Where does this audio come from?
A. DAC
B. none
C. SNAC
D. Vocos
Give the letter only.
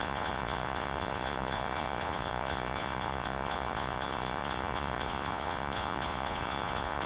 D